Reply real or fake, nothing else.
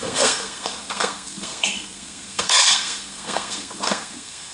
fake